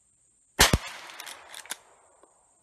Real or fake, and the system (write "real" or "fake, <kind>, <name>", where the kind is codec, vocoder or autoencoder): real